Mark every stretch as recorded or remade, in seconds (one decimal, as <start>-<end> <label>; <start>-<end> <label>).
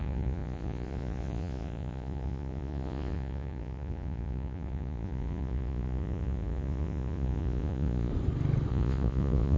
0.0-8.1 remade; 8.1-8.7 recorded; 8.7-9.6 remade